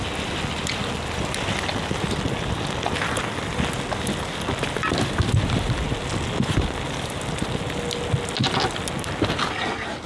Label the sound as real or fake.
real